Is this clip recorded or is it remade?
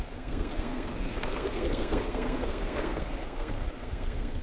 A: remade